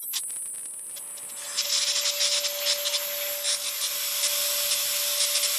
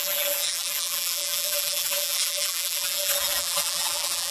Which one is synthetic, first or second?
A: second